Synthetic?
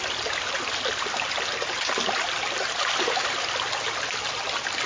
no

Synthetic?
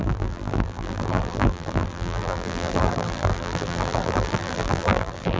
yes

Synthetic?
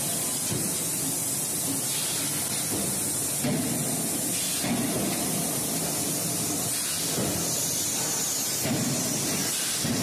no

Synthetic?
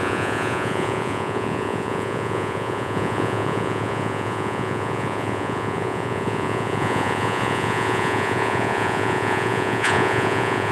yes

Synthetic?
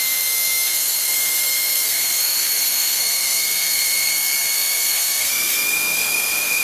yes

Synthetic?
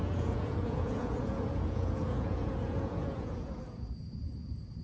yes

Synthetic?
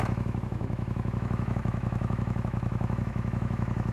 yes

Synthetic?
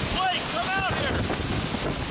no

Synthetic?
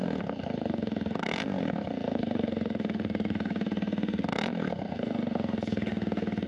yes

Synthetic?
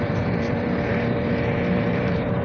yes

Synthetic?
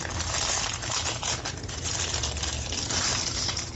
no